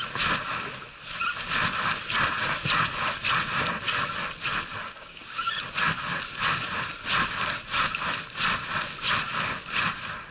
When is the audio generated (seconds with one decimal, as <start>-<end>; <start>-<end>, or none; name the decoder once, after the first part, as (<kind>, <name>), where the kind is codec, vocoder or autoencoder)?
5.0-5.5 (codec, DAC)